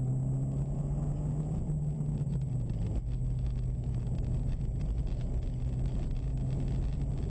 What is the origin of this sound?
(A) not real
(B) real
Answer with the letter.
B